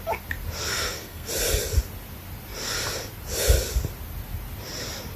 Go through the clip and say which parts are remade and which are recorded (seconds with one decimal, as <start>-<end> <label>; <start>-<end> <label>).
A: 0.0-0.7 recorded; 0.7-1.3 remade; 1.3-5.2 recorded